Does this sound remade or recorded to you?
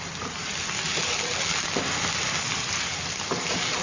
recorded